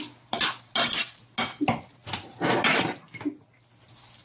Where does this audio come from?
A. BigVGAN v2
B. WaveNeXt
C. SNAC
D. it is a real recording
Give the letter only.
D